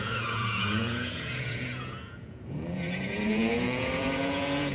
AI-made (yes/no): yes